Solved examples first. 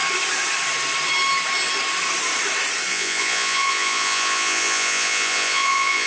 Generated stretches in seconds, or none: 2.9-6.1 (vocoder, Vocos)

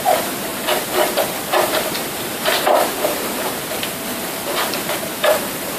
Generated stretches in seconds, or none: 0.0-5.8 (vocoder, BigVGAN v2)